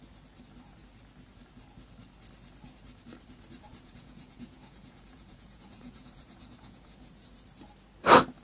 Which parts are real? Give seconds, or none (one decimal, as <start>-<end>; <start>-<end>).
0.0-3.7; 7.1-8.4